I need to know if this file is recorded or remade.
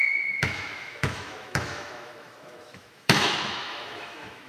remade